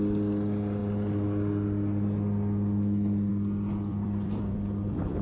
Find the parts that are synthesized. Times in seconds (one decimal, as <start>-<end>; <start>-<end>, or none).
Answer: 3.9-5.2